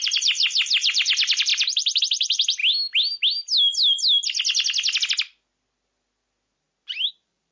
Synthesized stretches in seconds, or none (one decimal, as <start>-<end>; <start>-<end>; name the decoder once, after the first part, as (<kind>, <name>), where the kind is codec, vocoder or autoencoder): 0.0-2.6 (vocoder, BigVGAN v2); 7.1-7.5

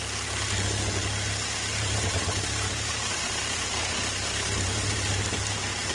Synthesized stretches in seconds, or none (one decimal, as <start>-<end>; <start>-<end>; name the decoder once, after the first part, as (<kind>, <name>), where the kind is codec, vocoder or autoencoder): 1.7-5.2 (vocoder, BigVGAN v2)

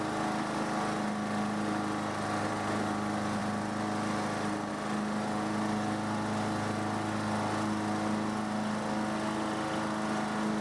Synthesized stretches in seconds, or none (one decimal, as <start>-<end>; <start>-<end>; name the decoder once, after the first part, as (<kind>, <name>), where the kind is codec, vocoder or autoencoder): none